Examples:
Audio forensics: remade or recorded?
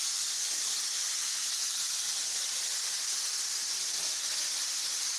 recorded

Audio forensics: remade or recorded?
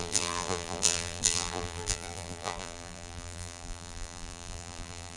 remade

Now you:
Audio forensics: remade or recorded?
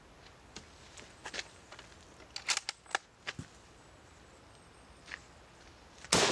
recorded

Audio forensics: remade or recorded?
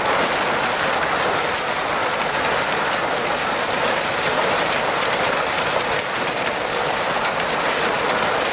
recorded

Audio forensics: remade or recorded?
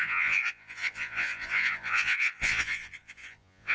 remade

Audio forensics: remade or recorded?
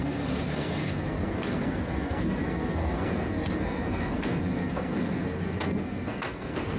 remade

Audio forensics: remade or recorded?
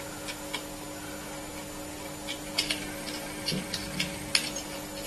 recorded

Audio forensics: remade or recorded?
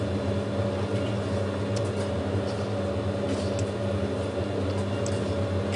recorded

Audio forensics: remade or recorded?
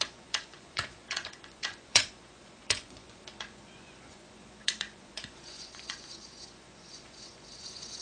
remade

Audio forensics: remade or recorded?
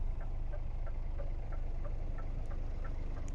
remade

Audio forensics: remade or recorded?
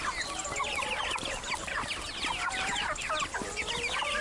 recorded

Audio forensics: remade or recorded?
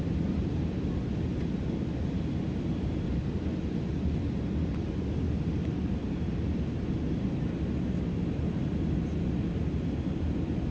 recorded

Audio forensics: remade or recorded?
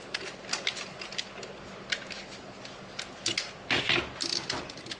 recorded